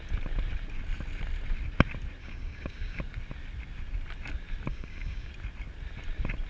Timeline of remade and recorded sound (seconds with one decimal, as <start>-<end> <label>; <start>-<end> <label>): 0.0-2.2 recorded; 2.2-3.0 remade; 3.0-4.7 recorded; 4.7-5.3 remade; 5.3-6.5 recorded